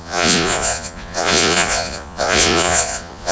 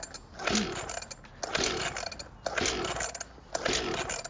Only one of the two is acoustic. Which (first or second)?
second